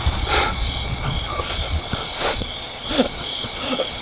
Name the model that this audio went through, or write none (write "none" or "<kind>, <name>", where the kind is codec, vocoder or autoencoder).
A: vocoder, Vocos